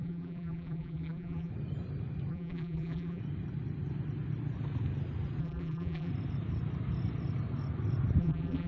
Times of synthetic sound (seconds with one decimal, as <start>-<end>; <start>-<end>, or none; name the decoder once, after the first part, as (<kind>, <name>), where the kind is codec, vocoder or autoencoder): 0.0-1.5 (vocoder, BigVGAN v2); 2.3-3.2; 5.4-6.1; 8.2-8.7

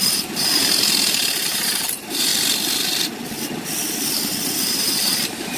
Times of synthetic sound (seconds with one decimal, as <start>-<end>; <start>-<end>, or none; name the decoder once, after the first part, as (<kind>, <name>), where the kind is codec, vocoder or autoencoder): 0.0-2.3 (vocoder, BigVGAN v2); 4.7-5.6

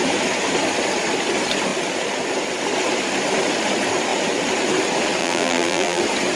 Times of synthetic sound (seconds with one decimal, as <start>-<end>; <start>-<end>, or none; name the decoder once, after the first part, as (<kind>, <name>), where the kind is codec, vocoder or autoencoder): 5.2-6.0 (vocoder, BigVGAN v2)

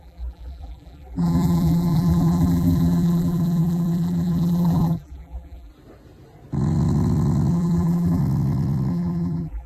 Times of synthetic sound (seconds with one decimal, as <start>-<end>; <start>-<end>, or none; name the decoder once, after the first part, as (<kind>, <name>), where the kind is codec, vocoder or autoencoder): 0.0-5.7 (vocoder, BigVGAN v2); 7.5-8.2; 8.9-9.7